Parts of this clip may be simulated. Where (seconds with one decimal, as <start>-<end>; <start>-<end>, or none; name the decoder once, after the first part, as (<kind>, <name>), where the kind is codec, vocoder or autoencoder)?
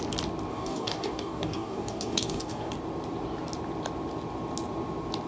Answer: 0.5-2.7 (codec, DAC)